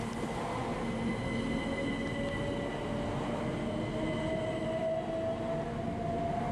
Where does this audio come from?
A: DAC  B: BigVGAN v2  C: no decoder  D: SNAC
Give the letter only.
C